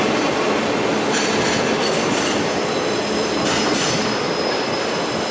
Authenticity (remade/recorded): recorded